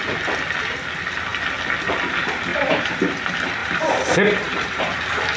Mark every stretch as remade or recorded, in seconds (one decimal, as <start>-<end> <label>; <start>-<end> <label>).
0.0-2.5 recorded; 2.5-3.1 remade; 3.1-3.6 recorded; 3.6-4.8 remade; 4.8-5.4 recorded